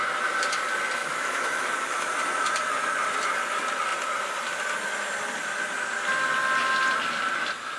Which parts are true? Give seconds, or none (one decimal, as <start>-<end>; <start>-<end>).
0.0-1.0; 2.1-7.8